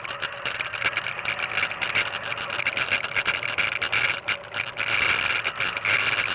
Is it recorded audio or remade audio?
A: recorded